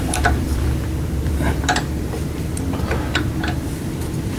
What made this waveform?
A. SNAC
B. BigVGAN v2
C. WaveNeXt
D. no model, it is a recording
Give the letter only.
B